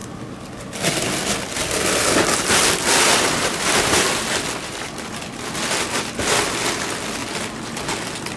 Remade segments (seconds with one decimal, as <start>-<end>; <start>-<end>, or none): none